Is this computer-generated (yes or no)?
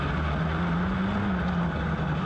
no